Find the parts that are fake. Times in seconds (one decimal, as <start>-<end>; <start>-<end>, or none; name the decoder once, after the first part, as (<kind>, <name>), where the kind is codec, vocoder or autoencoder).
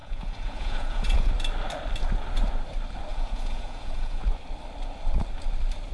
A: 0.0-1.3 (vocoder, Vocos); 3.1-4.2